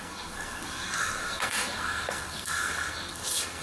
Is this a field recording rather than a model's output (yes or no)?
no